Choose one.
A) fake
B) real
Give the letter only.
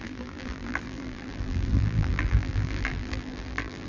A